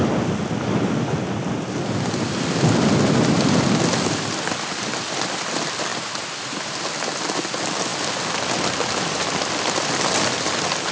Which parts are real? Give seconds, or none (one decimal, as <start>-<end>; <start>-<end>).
0.0-10.9